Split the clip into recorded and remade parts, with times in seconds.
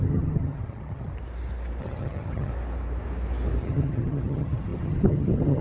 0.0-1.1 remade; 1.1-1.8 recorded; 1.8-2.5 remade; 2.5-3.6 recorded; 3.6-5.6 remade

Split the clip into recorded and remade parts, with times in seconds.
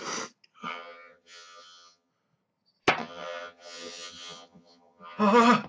0.0-0.6 recorded; 0.6-2.1 remade; 2.1-3.0 recorded; 3.0-5.2 remade; 5.2-5.7 recorded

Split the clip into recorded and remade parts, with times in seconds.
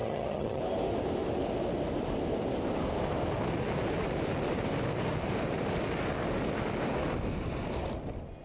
0.0-0.6 remade; 0.6-8.4 recorded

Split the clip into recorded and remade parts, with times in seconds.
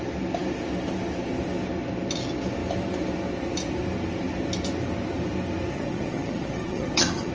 0.0-5.7 recorded; 5.7-7.3 remade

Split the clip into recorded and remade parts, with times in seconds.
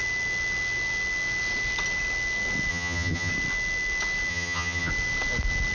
0.0-2.7 recorded; 2.7-3.3 remade; 3.3-4.3 recorded; 4.3-4.9 remade; 4.9-5.7 recorded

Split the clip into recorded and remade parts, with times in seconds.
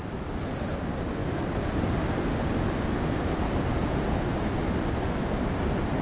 0.0-6.0 recorded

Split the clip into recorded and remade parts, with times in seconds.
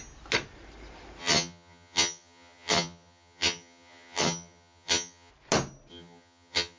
0.0-1.2 recorded; 1.2-5.3 remade; 5.3-5.9 recorded; 5.9-6.8 remade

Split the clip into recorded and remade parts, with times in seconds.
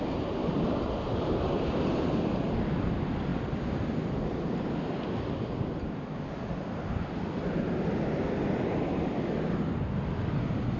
0.0-10.8 recorded